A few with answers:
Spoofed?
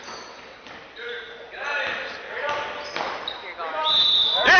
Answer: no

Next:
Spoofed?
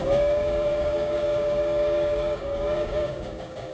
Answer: yes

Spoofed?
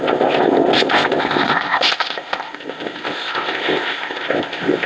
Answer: yes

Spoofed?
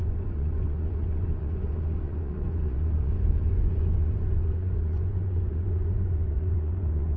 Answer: yes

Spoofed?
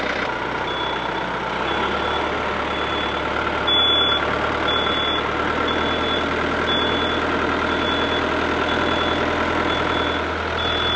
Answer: no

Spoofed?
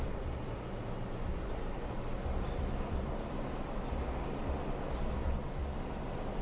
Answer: no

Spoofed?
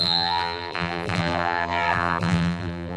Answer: yes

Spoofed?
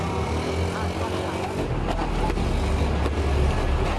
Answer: no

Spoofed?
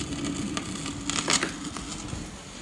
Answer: no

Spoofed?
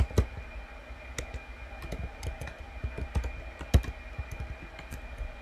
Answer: no